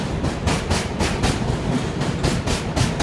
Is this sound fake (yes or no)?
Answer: no